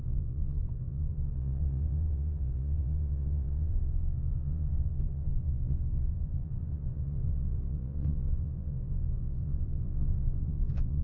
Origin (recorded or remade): remade